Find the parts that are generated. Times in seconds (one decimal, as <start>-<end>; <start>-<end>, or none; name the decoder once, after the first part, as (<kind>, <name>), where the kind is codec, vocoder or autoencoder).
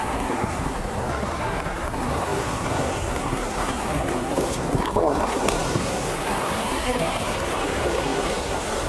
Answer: 0.0-8.9 (codec, SNAC)